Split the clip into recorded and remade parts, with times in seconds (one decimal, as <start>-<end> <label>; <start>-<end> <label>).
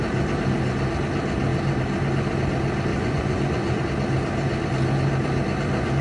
0.0-2.9 recorded; 2.9-3.8 remade; 3.8-6.0 recorded